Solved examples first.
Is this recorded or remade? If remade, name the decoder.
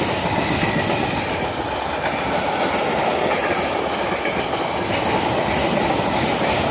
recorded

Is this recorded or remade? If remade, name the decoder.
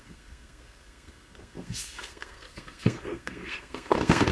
remade, codec, SNAC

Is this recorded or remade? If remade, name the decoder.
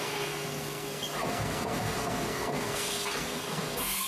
remade, codec, SNAC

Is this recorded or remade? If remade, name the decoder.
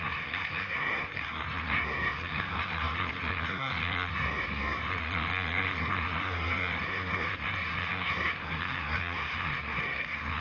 remade, codec, SNAC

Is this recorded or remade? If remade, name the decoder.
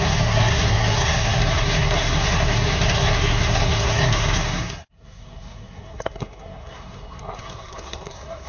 remade, codec, SNAC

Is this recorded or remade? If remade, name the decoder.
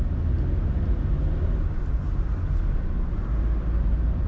recorded